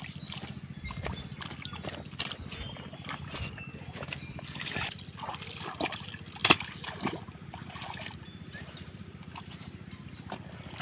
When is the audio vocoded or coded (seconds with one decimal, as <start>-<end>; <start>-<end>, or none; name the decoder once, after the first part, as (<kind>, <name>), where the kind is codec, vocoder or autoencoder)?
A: 6.4-9.9 (vocoder, BigVGAN v2)